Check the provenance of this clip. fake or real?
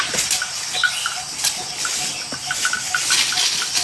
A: real